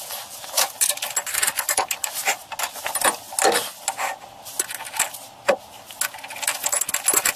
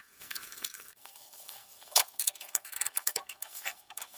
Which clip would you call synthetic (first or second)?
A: second